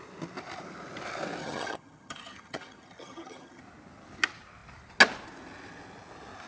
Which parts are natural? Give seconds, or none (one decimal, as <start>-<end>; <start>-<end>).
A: 0.0-1.4; 3.6-6.5